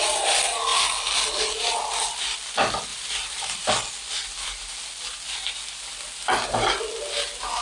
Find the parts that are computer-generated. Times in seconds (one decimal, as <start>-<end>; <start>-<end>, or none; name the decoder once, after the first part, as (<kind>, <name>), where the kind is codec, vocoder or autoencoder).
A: 2.9-3.7 (vocoder, BigVGAN v2)